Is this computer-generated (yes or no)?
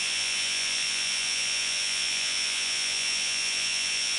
yes